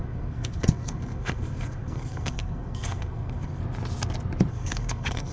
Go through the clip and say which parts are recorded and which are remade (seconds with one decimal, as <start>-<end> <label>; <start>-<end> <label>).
0.0-3.6 remade; 3.6-4.5 recorded; 4.5-5.3 remade